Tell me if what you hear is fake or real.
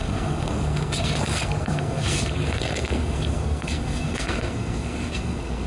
fake